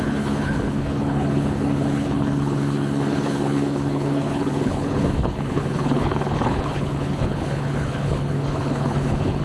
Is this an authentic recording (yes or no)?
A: no